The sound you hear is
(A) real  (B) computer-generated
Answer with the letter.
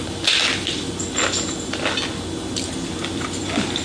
A